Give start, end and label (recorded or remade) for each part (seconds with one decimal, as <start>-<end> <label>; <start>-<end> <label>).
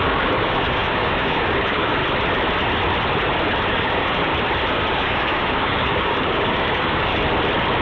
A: 0.0-2.0 remade; 2.0-3.7 recorded; 3.7-4.3 remade; 4.3-4.9 recorded; 4.9-7.1 remade; 7.1-7.8 recorded